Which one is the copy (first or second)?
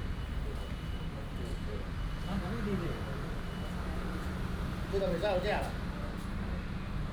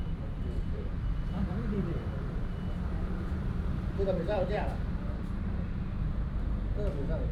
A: second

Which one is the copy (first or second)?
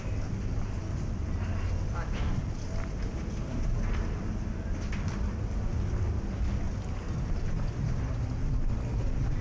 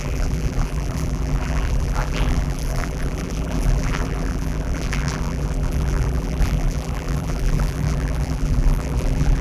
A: second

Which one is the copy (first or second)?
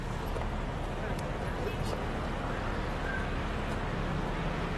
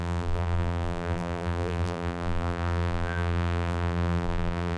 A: second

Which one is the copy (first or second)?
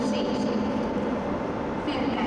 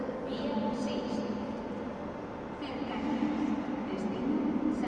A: first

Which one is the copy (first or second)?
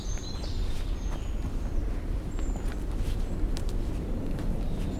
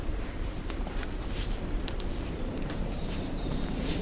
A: second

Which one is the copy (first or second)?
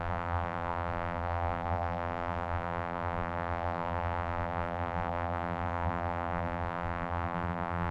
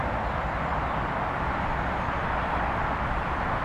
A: first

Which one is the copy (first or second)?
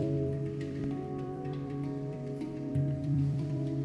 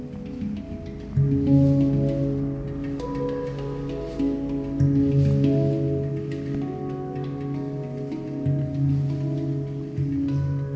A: first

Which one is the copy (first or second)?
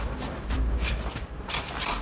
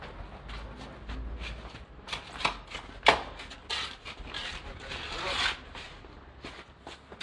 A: first